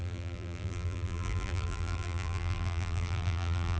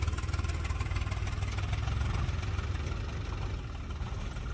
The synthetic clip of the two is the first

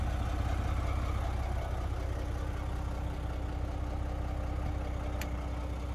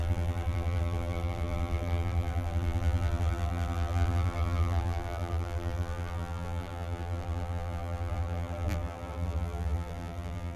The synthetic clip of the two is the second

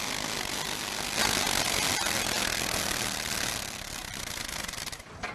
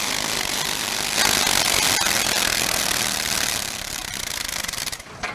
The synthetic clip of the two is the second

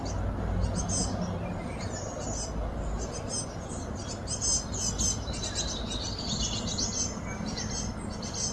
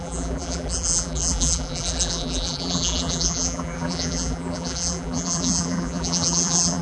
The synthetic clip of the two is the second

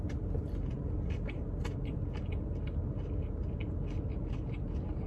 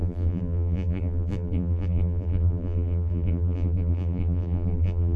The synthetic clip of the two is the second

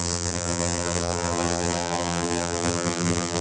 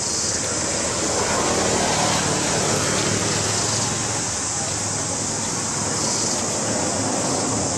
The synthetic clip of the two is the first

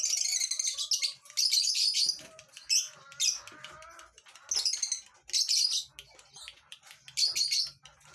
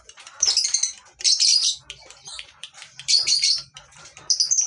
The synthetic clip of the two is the second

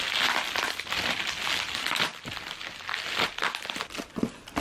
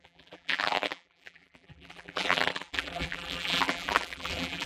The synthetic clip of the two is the second